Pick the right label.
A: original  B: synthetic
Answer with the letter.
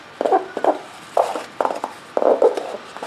A